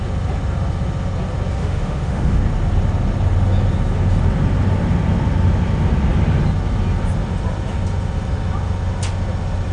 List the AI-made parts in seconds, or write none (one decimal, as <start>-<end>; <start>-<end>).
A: 1.6-2.4